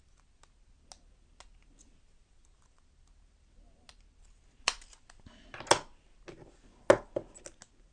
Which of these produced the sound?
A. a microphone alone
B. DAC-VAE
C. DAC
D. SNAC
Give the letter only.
A